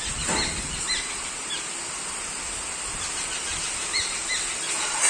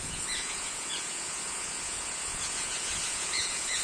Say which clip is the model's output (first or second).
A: second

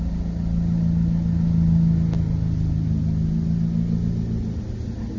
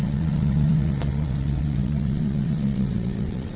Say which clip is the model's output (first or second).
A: second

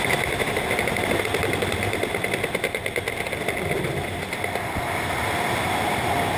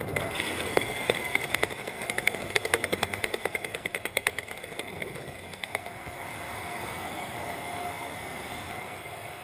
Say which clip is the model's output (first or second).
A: second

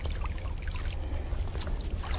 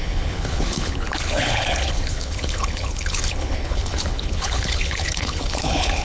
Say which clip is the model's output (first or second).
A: second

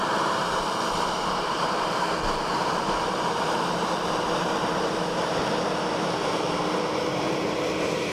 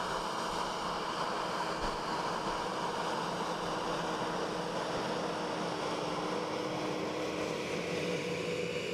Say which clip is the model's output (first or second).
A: first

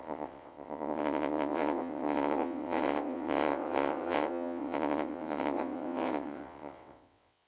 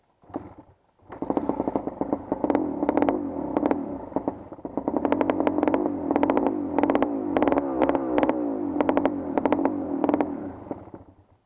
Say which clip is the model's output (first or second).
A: first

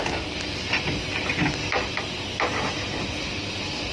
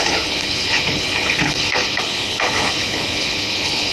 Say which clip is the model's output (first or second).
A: second